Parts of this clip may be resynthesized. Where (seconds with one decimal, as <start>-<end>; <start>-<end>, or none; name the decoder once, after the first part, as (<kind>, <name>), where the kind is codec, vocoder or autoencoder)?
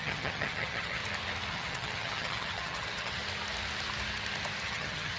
0.0-1.0 (vocoder, HiFi-GAN); 1.5-3.2; 4.6-5.2